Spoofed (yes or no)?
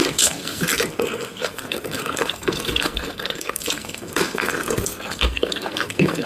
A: yes